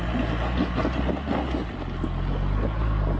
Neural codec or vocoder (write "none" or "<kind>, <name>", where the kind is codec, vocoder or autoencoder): none